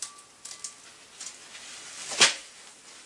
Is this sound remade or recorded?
recorded